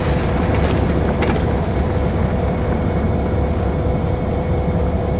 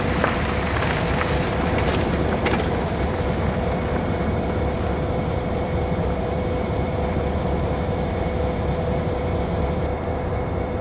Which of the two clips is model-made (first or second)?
second